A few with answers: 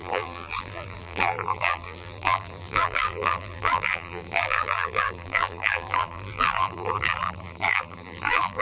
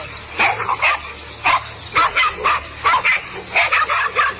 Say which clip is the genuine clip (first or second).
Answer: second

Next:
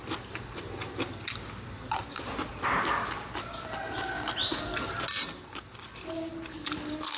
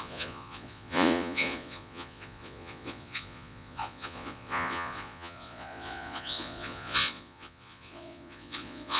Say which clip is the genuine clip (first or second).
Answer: first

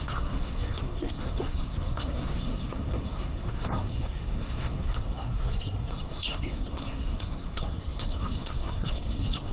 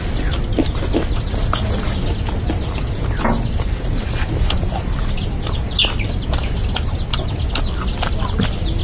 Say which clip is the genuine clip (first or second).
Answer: second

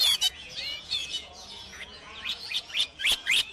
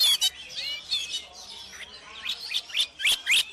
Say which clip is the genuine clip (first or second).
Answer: second